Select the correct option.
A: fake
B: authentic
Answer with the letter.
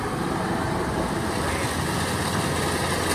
B